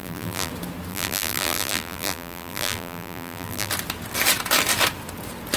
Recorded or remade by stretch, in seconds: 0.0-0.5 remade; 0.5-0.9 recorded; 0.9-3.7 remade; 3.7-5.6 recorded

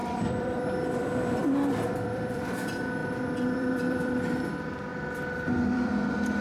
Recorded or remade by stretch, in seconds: 0.0-2.4 remade; 2.4-3.0 recorded; 3.0-4.5 remade; 4.5-4.9 recorded; 4.9-5.9 remade; 5.9-6.4 recorded

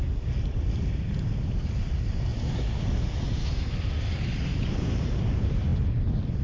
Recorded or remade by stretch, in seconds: 0.0-2.3 remade; 2.3-5.2 recorded; 5.2-5.7 remade; 5.7-6.4 recorded

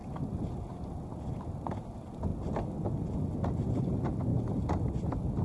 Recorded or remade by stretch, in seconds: 0.0-1.4 recorded; 1.4-2.3 remade; 2.3-3.5 recorded; 3.5-4.3 remade; 4.3-4.9 recorded; 4.9-5.4 remade